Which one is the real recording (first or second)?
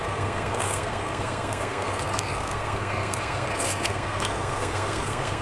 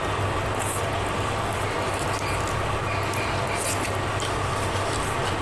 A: second